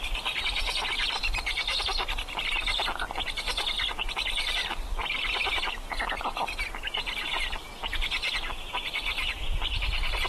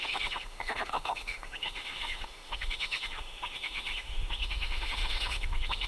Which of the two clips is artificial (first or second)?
second